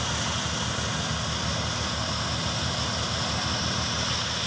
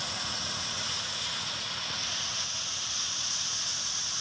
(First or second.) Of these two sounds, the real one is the first